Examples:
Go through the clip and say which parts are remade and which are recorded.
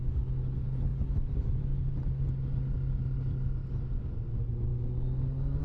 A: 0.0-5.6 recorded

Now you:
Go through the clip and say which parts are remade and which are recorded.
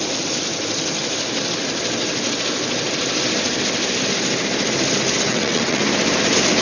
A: 0.0-5.3 recorded; 5.3-5.8 remade; 5.8-6.6 recorded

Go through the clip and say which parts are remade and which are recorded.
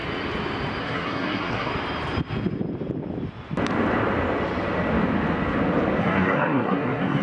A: 0.0-0.8 recorded; 0.8-1.7 remade; 1.7-6.0 recorded; 6.0-7.2 remade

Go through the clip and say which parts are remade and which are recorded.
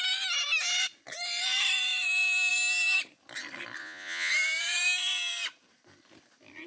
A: 0.0-3.8 recorded; 3.8-4.3 remade; 4.3-6.7 recorded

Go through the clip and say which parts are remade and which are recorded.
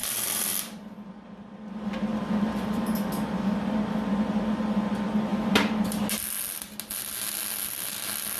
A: 0.0-1.1 remade; 1.1-2.1 recorded; 2.1-3.7 remade; 3.7-5.3 recorded; 5.3-6.0 remade; 6.0-8.4 recorded